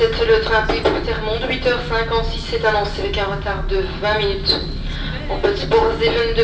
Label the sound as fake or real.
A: real